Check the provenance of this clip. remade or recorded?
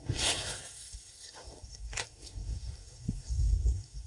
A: remade